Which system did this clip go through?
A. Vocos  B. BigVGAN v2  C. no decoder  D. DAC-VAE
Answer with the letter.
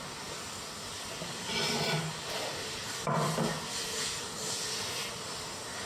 C